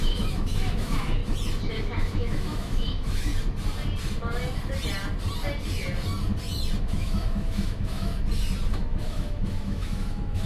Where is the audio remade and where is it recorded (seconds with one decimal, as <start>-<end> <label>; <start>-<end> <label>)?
0.0-1.2 remade; 1.2-1.7 recorded; 1.7-3.3 remade; 3.3-6.8 recorded; 6.8-8.1 remade; 8.1-8.7 recorded; 8.7-10.5 remade

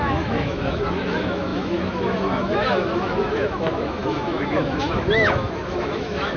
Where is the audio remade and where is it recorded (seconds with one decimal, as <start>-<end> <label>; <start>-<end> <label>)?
0.0-6.4 remade

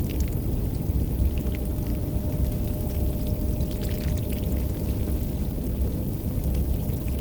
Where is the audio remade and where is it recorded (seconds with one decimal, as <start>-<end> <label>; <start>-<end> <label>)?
0.0-7.2 recorded

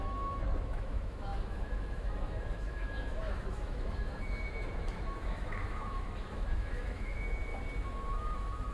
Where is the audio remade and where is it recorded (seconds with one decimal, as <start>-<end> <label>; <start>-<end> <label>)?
0.0-7.5 remade; 7.5-8.1 recorded; 8.1-8.7 remade